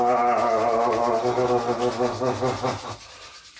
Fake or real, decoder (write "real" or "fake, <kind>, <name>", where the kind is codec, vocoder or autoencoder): real